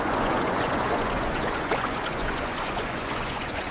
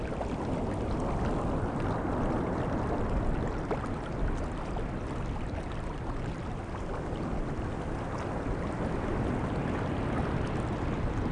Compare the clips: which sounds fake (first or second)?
first